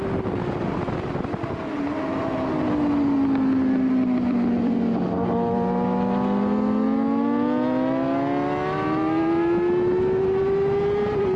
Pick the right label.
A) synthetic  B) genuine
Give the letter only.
B